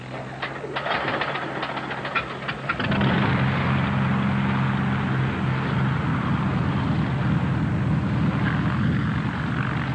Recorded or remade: recorded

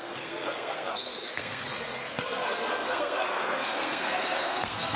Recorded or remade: remade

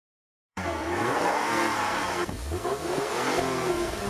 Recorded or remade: remade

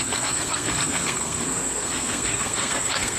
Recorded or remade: remade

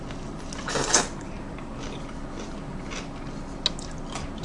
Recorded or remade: recorded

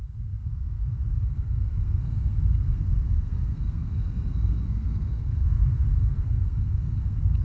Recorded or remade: remade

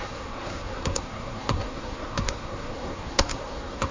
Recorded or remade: remade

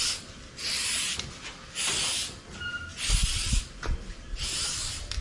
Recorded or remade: recorded